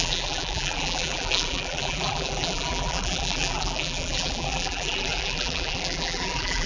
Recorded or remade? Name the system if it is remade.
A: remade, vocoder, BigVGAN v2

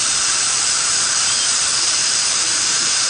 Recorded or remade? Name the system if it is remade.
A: remade, vocoder, BigVGAN v2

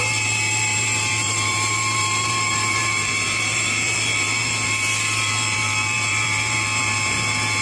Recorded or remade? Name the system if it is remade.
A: remade, vocoder, BigVGAN v2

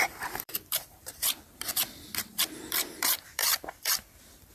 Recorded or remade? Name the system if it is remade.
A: remade, vocoder, BigVGAN v2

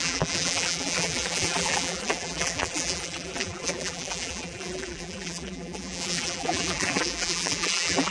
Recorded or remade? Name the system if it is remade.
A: remade, vocoder, BigVGAN v2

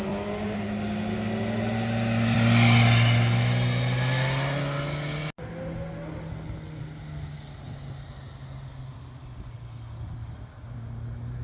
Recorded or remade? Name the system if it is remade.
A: recorded